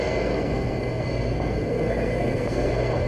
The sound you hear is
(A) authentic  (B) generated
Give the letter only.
B